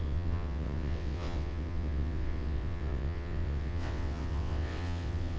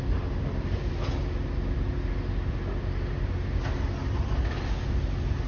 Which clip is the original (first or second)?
second